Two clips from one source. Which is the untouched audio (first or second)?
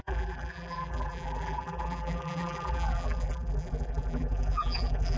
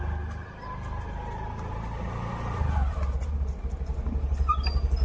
second